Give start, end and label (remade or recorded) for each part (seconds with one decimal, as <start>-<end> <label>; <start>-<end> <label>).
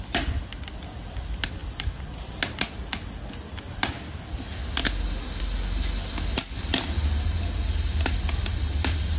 0.0-9.2 recorded